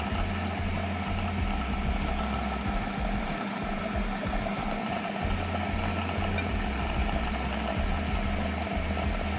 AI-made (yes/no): no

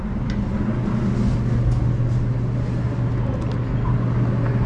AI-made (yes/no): no